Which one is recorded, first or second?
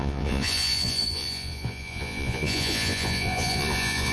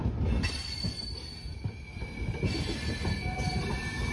second